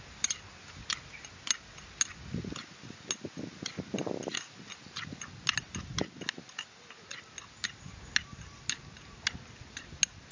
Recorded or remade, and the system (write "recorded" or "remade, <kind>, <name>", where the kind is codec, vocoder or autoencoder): recorded